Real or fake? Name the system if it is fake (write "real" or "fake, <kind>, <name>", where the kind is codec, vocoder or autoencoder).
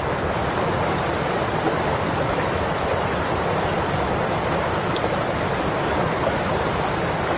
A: real